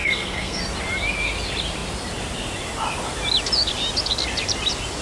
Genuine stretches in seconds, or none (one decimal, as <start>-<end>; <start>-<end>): 0.6-5.0